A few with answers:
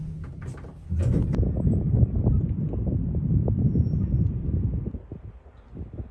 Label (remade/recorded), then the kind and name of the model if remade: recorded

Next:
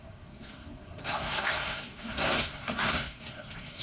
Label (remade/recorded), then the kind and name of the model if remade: remade, codec, SNAC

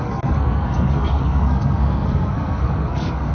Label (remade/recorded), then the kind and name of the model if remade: remade, codec, SNAC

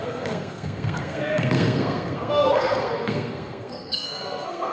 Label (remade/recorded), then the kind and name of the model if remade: remade, codec, SNAC